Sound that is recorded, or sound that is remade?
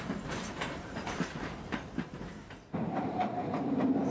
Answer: remade